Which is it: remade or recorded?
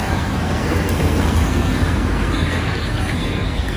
remade